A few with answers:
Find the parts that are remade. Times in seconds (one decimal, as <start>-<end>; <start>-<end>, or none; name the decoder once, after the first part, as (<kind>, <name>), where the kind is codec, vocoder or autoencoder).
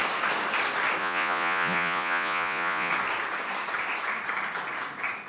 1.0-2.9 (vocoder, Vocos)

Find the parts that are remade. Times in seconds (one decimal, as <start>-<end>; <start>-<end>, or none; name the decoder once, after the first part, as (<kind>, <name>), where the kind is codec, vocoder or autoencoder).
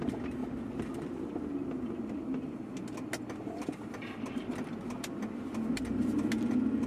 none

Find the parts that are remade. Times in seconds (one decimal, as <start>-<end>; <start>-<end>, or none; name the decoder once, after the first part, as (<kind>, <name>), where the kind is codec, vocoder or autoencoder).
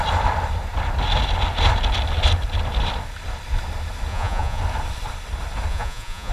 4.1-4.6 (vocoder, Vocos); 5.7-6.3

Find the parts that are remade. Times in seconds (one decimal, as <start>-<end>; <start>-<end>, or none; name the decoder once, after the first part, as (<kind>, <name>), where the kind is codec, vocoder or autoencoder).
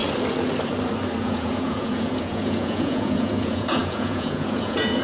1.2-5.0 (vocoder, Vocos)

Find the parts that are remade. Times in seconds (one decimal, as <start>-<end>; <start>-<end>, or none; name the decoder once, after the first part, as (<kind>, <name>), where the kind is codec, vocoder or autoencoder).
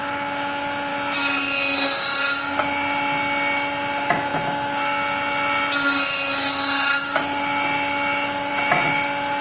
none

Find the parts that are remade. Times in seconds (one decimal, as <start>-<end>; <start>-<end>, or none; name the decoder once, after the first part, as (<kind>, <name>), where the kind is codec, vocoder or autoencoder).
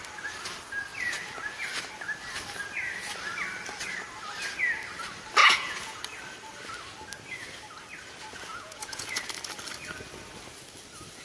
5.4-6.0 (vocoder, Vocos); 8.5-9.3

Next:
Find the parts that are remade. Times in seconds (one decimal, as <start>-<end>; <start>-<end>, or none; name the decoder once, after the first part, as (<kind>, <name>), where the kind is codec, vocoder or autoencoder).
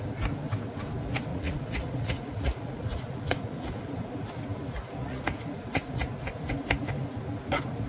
1.3-4.1 (vocoder, Vocos); 5.0-6.1